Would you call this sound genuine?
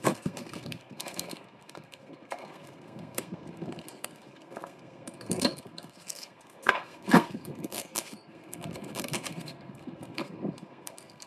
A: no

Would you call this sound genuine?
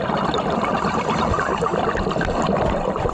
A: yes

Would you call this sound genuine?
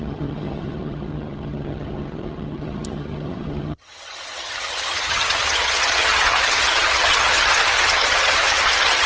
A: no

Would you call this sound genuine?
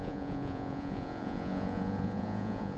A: no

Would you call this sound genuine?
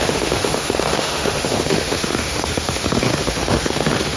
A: no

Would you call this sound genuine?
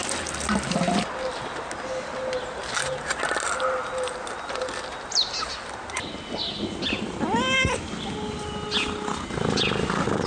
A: yes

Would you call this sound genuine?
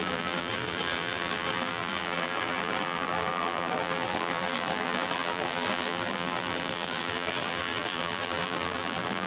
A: no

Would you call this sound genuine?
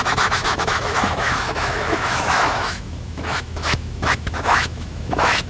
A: no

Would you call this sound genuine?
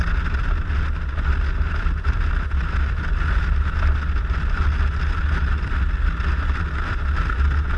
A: yes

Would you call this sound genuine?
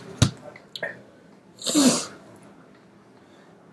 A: yes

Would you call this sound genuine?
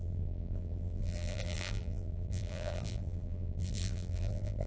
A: no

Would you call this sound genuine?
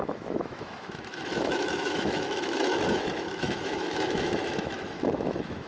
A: no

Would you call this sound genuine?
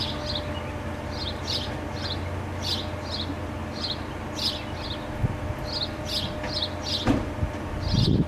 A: yes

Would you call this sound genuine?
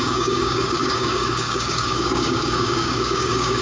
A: no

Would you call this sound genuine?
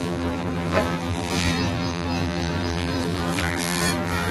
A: no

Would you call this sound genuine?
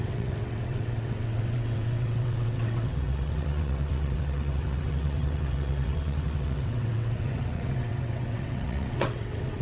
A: no